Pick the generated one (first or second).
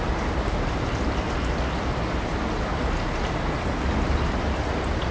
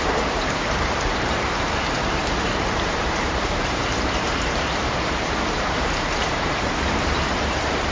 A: second